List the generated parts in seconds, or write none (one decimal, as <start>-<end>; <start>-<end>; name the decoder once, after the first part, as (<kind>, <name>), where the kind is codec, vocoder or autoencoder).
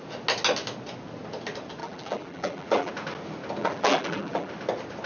1.8-2.9 (vocoder, BigVGAN v2); 3.6-4.5